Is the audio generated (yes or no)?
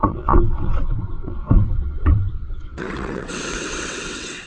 yes